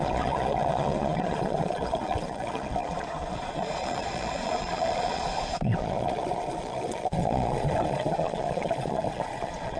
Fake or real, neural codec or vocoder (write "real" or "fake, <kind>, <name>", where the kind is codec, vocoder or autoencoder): fake, vocoder, Vocos